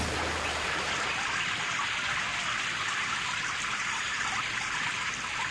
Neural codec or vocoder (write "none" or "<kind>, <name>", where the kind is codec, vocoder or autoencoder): vocoder, BigVGAN v2